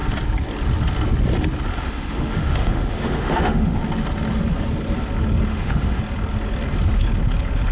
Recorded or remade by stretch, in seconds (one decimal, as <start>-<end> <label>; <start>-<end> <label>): 0.0-1.7 recorded; 1.7-3.8 remade; 3.8-5.5 recorded; 5.5-6.0 remade; 6.0-7.7 recorded